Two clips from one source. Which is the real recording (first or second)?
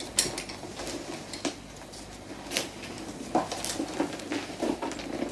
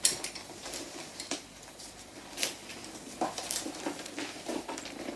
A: first